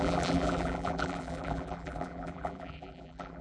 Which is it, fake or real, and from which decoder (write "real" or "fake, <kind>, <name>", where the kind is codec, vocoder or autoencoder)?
fake, vocoder, BigVGAN v2